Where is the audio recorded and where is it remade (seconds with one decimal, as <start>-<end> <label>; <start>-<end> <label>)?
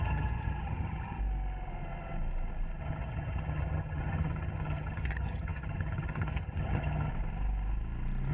0.0-1.2 remade; 1.2-2.8 recorded; 2.8-7.1 remade; 7.1-8.3 recorded